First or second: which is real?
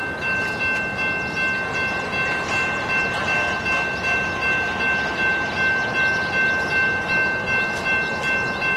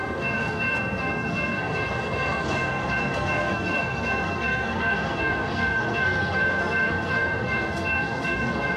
first